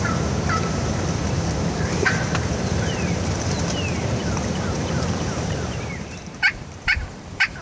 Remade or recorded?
remade